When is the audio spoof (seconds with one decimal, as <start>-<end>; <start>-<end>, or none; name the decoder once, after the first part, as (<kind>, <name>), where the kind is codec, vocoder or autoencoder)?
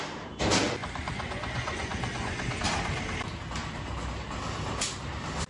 0.8-2.6 (vocoder, Vocos)